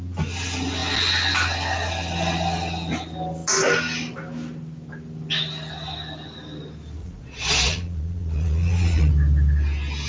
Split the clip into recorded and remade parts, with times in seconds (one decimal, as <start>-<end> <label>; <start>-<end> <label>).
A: 0.0-7.0 recorded; 7.0-9.1 remade; 9.1-10.1 recorded

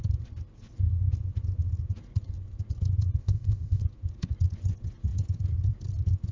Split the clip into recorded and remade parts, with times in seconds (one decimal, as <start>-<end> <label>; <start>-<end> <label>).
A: 0.0-3.2 recorded; 3.2-3.8 remade; 3.8-6.3 recorded

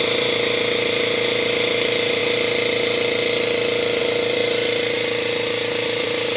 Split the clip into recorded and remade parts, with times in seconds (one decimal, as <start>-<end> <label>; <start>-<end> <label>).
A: 0.0-2.2 remade; 2.2-4.0 recorded; 4.0-4.4 remade; 4.4-5.6 recorded; 5.6-6.4 remade

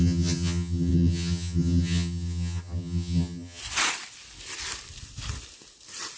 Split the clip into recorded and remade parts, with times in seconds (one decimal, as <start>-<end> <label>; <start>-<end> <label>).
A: 0.0-3.6 remade; 3.6-6.2 recorded